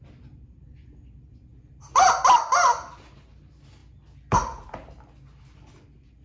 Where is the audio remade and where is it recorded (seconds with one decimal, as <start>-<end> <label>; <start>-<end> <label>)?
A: 0.0-6.2 recorded